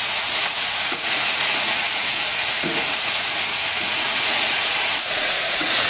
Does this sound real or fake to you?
fake